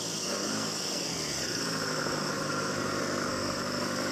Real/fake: fake